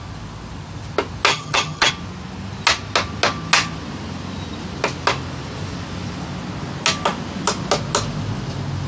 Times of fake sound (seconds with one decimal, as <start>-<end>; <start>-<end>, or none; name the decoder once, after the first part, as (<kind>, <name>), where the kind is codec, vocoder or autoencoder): 1.3-1.9 (vocoder, HiFi-GAN)